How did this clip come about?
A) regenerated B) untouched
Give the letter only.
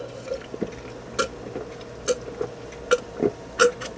B